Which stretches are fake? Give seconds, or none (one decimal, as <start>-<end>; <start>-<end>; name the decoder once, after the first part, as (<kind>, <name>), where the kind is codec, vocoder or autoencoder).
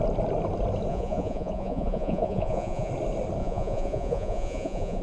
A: 0.9-2.9 (vocoder, Vocos); 3.4-5.0